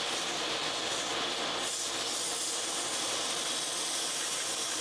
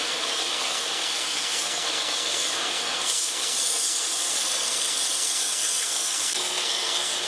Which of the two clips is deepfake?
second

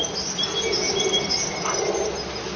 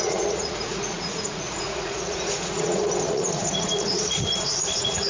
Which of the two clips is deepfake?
second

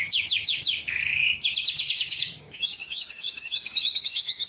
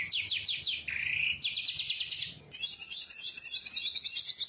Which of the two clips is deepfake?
first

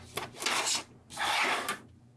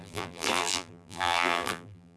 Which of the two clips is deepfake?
second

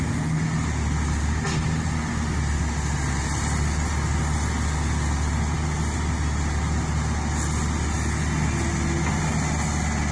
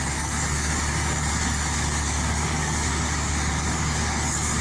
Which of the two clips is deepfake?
second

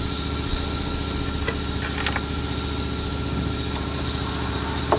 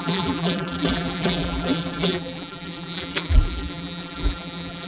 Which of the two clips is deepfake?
second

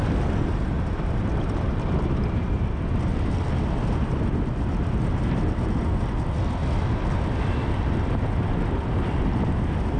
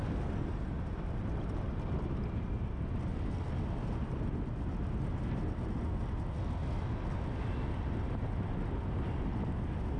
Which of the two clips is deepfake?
first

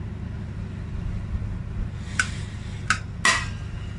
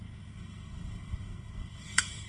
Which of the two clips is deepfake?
second